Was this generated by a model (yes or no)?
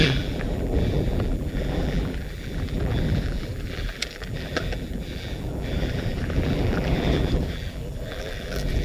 yes